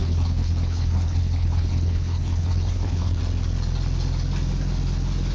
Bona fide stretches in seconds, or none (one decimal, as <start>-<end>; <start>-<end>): 3.2-5.3